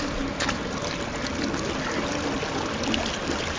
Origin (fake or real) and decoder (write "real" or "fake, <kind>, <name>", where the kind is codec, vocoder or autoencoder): real